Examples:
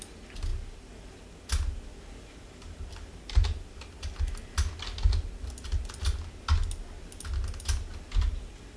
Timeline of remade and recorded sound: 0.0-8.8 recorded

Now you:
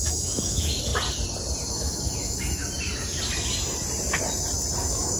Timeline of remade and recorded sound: 0.0-0.9 remade; 0.9-1.7 recorded; 1.7-2.6 remade; 2.6-4.8 recorded; 4.8-5.2 remade

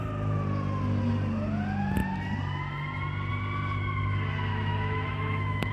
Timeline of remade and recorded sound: 0.0-4.5 recorded; 4.5-5.7 remade

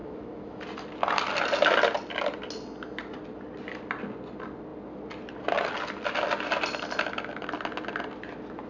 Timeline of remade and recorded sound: 0.0-0.6 remade; 0.6-8.7 recorded